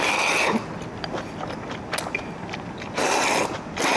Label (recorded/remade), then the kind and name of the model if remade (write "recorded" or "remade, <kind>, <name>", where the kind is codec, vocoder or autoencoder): recorded